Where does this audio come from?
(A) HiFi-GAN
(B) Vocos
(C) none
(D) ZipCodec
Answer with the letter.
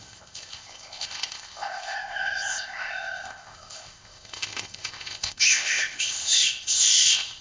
D